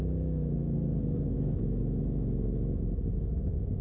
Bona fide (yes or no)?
no